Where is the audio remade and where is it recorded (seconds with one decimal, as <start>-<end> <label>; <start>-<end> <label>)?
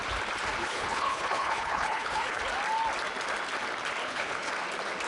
0.0-0.6 recorded; 0.6-2.4 remade; 2.4-4.0 recorded; 4.0-4.5 remade; 4.5-5.1 recorded